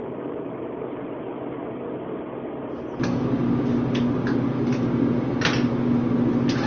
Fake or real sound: real